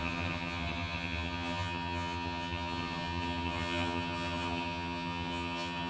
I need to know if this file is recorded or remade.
remade